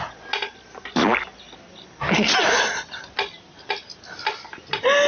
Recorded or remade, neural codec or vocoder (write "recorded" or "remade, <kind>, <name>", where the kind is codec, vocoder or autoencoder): recorded